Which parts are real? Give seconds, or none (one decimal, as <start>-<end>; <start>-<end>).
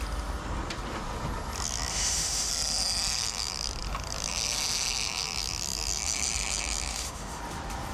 0.0-1.9; 2.5-6.9; 7.4-7.9